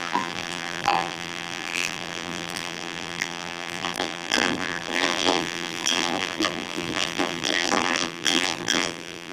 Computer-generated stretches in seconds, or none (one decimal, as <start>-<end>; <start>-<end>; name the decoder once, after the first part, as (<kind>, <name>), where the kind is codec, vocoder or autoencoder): 0.0-9.3 (vocoder, BigVGAN v2)